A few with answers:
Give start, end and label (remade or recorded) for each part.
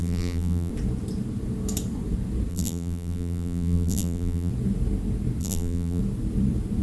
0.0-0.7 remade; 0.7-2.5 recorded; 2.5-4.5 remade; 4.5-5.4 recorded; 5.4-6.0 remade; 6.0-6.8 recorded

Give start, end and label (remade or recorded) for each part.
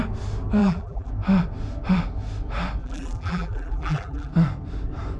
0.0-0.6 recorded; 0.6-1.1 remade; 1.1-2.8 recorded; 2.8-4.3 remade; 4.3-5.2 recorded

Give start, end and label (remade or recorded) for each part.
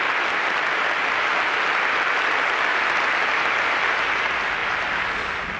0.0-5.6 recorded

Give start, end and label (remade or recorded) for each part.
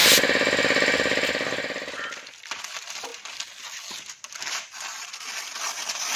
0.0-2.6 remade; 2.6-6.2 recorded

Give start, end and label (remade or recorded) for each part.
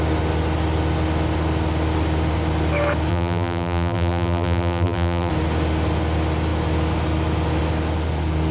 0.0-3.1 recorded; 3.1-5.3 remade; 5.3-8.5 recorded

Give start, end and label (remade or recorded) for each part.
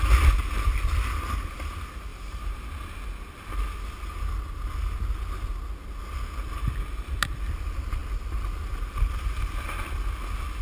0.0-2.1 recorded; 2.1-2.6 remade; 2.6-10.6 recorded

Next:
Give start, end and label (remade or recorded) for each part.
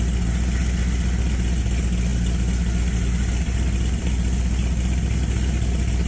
0.0-2.1 recorded; 2.1-6.1 remade